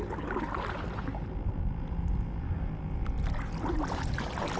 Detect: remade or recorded recorded